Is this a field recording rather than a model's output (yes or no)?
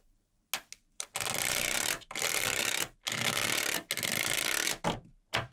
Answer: yes